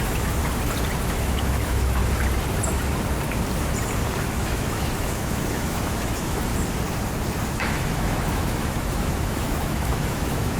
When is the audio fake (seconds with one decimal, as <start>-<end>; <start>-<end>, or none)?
0.0-0.4; 1.0-2.0; 4.3-6.5; 7.5-10.6